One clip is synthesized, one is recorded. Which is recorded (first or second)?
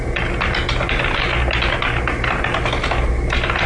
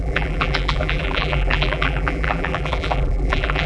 first